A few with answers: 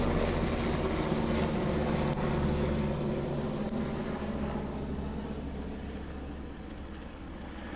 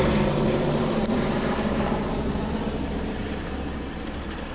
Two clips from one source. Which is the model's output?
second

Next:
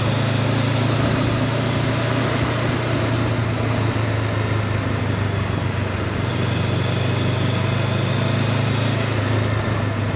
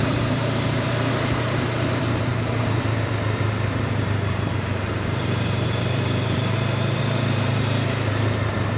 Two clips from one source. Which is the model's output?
second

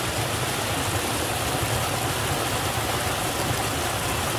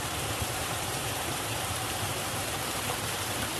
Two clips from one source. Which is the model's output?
second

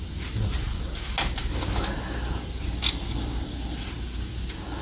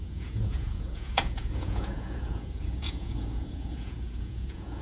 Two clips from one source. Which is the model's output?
second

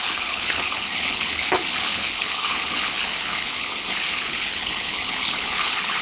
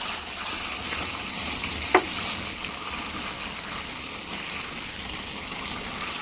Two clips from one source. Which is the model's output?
first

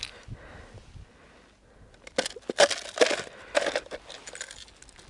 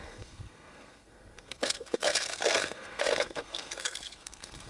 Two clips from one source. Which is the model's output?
second